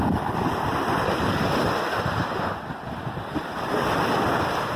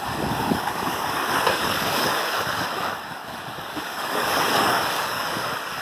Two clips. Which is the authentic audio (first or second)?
first